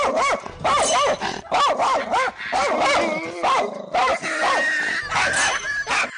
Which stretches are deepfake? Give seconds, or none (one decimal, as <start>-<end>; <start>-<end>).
none